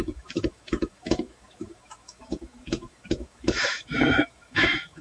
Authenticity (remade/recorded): remade